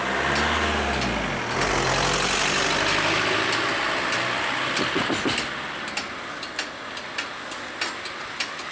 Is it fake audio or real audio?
real